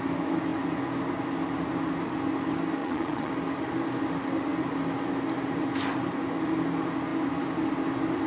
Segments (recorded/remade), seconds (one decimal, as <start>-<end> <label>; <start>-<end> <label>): 0.0-2.8 recorded; 2.8-3.3 remade; 3.3-8.3 recorded